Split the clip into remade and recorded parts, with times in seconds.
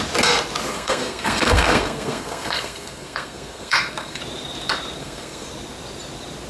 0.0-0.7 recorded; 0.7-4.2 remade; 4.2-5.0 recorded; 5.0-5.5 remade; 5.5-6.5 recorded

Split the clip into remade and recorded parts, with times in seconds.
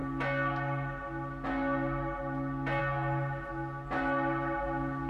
0.0-5.1 recorded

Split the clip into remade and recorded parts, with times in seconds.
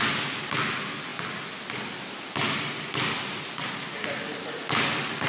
0.0-5.3 recorded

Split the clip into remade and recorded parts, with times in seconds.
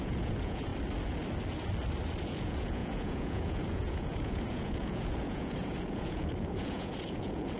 0.0-0.7 remade; 0.7-2.2 recorded; 2.2-7.6 remade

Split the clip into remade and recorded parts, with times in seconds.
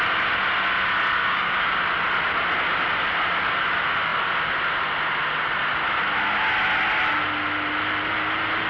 0.0-1.2 recorded; 1.2-1.8 remade; 1.8-8.7 recorded